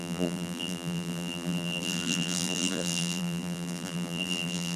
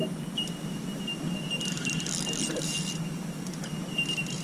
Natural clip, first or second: second